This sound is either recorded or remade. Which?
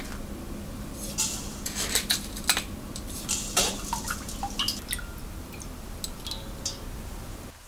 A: recorded